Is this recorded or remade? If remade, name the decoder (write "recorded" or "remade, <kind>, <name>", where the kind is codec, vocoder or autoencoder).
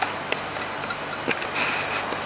recorded